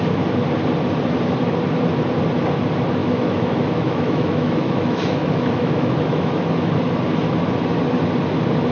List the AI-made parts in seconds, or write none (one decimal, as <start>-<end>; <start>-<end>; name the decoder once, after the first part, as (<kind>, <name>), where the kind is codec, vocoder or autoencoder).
3.0-6.7 (autoencoder, DAC-VAE)